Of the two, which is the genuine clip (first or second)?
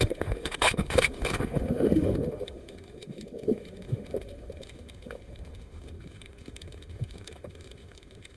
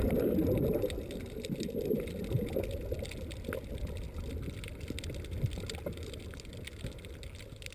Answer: second